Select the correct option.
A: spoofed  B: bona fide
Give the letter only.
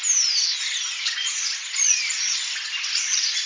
B